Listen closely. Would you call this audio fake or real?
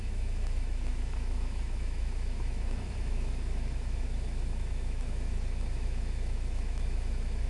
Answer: fake